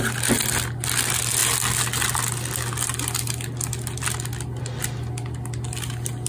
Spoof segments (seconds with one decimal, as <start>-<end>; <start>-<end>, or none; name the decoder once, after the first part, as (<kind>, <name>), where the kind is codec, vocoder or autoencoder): none